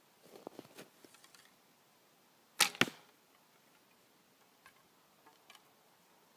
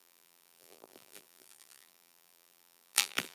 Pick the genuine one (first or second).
first